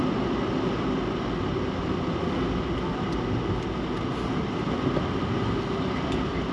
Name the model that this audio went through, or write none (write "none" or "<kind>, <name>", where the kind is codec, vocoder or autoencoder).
none